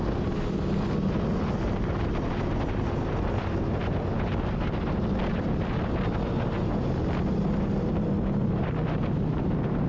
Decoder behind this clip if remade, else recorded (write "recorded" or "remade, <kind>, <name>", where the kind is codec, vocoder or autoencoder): recorded